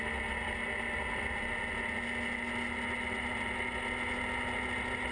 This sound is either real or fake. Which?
real